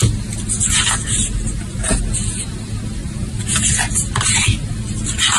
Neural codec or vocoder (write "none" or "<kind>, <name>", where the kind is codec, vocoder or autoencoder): none